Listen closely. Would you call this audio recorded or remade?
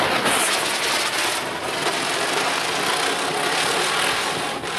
recorded